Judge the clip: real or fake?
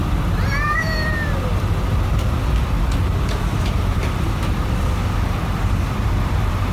fake